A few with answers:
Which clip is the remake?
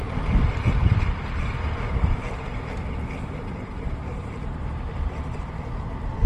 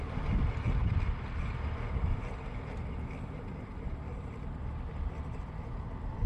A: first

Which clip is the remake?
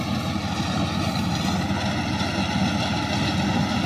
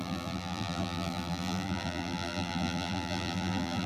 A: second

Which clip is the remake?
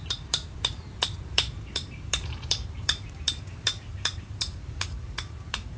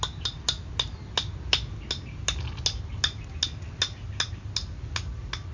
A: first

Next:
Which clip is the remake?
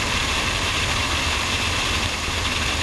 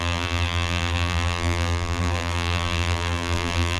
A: second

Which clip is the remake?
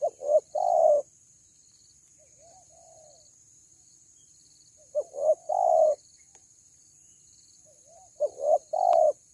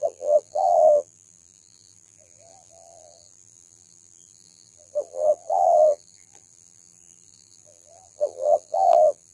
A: second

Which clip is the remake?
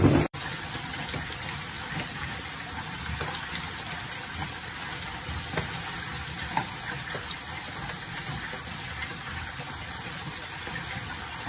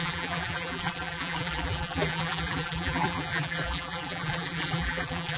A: second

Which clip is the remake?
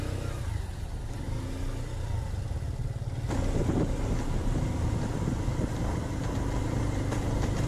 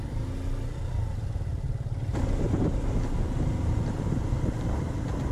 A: second